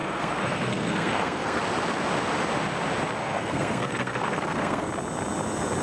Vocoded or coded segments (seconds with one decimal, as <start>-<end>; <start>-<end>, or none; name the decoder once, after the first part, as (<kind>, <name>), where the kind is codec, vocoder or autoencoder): 0.0-1.6 (codec, SNAC); 3.2-4.9